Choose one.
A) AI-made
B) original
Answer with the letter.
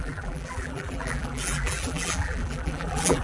A